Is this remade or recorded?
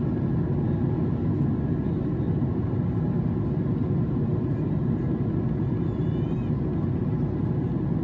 recorded